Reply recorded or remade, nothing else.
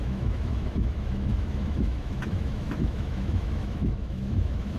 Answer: remade